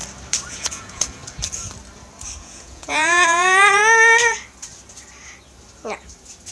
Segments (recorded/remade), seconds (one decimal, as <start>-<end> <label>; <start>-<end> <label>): 0.0-0.5 recorded; 0.5-1.2 remade; 1.2-2.4 recorded; 2.4-3.8 remade; 3.8-6.5 recorded